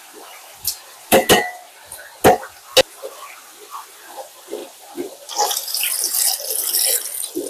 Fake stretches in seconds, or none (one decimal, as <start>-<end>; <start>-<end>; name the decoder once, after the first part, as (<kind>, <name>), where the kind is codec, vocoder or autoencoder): none